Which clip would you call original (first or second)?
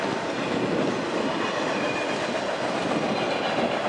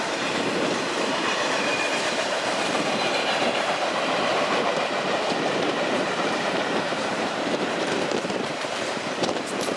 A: first